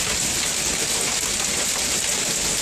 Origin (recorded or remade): recorded